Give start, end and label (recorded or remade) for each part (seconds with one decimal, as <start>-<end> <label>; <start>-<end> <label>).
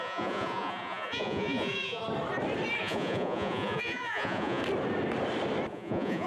0.0-2.0 remade; 2.0-2.8 recorded; 2.8-4.6 remade; 4.6-5.7 recorded; 5.7-6.3 remade